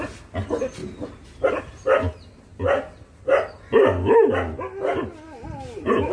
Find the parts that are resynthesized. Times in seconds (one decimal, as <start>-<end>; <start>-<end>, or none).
0.8-1.5